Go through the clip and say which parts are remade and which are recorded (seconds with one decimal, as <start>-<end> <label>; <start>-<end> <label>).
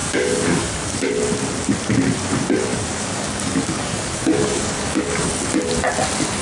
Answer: 0.0-1.1 remade; 1.1-2.7 recorded; 2.7-5.3 remade; 5.3-6.4 recorded